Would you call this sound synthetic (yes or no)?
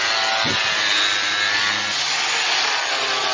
no